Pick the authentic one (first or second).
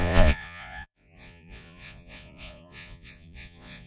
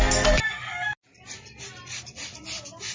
second